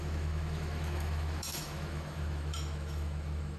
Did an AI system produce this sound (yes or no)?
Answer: yes